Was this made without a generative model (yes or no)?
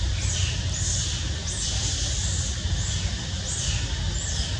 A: yes